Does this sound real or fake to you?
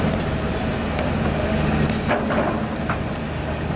real